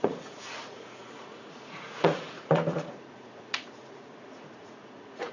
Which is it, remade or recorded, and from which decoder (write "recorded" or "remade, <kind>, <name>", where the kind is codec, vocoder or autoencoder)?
remade, vocoder, Vocos